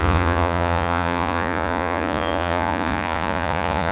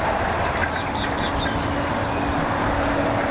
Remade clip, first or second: first